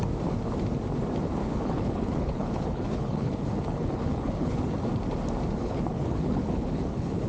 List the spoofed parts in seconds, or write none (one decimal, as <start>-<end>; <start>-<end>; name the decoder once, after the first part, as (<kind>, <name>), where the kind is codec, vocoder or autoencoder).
1.4-4.6 (codec, HILCodec); 5.6-7.3